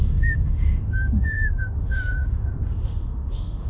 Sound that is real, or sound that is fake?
fake